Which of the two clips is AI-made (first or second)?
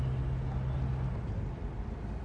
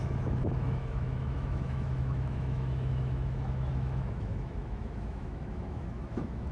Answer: second